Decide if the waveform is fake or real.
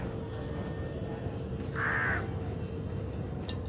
real